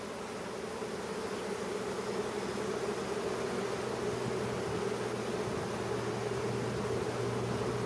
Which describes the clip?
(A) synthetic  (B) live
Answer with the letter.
B